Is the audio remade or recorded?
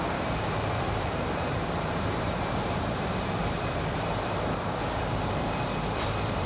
remade